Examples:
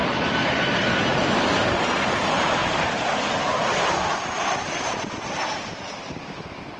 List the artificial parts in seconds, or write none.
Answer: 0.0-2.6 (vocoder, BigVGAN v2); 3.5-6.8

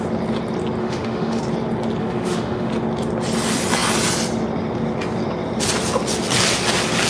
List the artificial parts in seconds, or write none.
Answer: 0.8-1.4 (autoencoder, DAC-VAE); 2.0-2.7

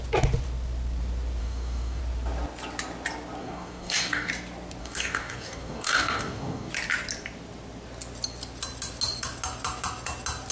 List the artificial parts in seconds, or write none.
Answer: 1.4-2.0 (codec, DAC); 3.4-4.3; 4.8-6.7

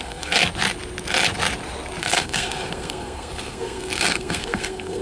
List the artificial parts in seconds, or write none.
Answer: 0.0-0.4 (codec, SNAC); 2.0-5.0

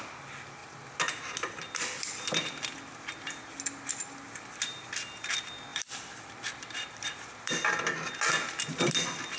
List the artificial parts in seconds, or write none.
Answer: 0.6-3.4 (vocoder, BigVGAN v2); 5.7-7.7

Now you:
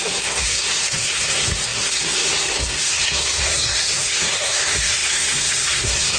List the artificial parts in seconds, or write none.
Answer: 0.0-6.2 (codec, SNAC)